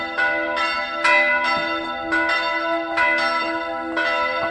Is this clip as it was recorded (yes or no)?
yes